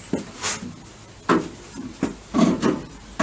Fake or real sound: real